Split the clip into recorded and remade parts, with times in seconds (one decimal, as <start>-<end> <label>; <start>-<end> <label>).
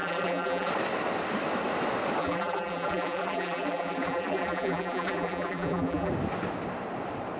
0.0-0.7 remade; 0.7-2.2 recorded; 2.2-6.1 remade; 6.1-7.4 recorded